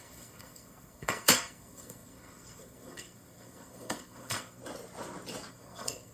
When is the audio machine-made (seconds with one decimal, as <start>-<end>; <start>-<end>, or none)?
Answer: 0.0-4.6; 5.5-6.1